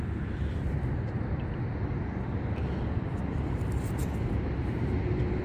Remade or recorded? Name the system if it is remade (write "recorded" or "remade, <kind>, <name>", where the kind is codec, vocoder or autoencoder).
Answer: recorded